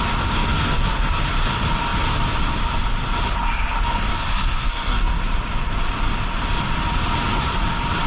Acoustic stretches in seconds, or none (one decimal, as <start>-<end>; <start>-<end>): 0.0-0.4; 1.2-4.1; 5.1-8.1